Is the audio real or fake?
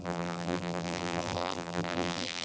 fake